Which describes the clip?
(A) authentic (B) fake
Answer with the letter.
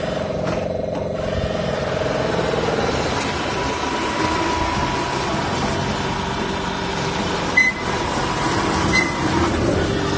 A